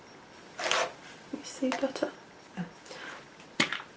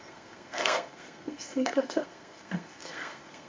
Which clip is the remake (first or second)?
second